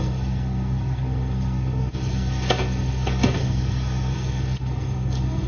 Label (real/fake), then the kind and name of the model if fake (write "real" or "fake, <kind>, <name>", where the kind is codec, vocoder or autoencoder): fake, codec, SNAC